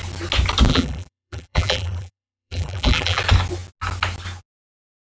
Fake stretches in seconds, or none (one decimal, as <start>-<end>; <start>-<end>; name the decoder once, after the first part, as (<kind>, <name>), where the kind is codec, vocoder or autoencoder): 0.7-3.2 (vocoder, BigVGAN v2)